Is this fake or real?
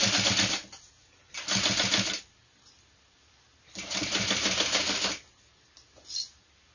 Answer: real